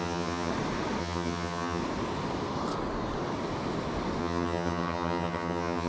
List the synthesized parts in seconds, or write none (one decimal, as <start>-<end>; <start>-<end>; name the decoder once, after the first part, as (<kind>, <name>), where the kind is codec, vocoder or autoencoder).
0.0-0.5 (vocoder, HiFi-GAN); 1.0-1.8; 4.2-5.9